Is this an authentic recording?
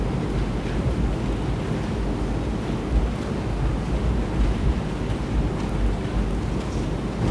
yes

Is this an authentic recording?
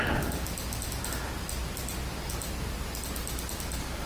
yes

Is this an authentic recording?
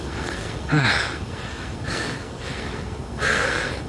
no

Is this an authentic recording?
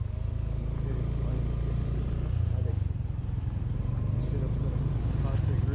yes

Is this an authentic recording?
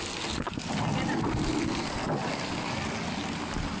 yes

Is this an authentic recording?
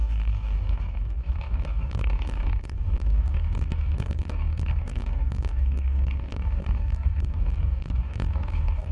no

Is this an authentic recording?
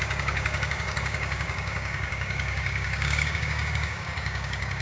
no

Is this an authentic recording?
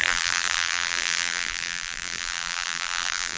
no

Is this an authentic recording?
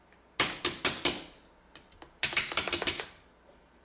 yes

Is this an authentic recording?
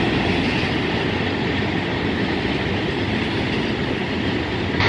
yes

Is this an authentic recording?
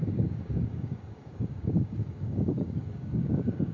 no